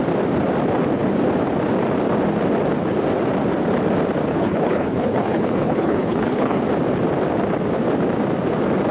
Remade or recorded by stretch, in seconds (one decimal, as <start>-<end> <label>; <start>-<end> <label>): 0.0-4.3 recorded; 4.3-6.6 remade; 6.6-8.9 recorded